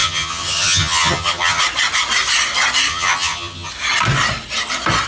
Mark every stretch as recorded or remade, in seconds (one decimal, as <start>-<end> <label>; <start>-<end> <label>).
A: 0.0-1.6 remade; 1.6-2.9 recorded; 2.9-3.7 remade; 3.7-5.1 recorded